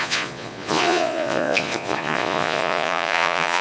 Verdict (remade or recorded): remade